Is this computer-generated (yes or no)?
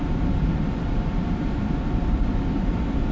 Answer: yes